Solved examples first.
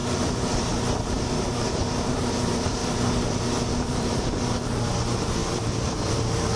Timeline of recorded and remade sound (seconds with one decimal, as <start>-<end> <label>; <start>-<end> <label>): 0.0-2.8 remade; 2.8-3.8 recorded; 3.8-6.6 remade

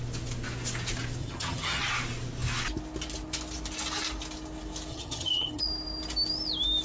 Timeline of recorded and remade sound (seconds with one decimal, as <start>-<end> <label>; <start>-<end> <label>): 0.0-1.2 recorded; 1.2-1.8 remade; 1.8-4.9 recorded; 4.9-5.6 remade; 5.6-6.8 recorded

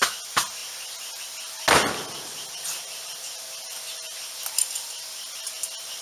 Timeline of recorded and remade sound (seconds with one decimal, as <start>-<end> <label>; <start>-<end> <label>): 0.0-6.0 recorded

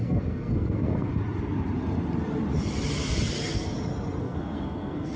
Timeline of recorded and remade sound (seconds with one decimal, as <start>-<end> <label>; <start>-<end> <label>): 0.0-1.1 remade; 1.1-4.2 recorded; 4.2-5.2 remade

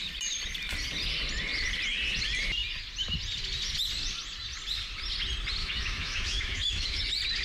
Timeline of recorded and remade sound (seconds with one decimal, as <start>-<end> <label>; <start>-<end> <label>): 0.0-5.6 recorded; 5.6-7.0 remade; 7.0-7.4 recorded

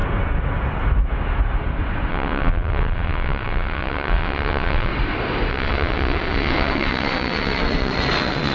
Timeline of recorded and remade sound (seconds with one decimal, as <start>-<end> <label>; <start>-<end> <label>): 0.0-2.1 recorded; 2.1-4.9 remade; 4.9-5.5 recorded; 5.5-8.5 remade